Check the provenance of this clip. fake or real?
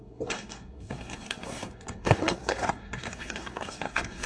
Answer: fake